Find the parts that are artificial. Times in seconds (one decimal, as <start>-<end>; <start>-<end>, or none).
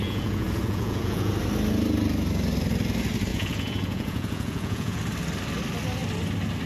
0.0-1.3; 3.3-5.0